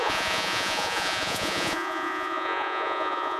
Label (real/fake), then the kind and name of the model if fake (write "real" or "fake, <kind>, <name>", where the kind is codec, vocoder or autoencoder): fake, vocoder, Vocos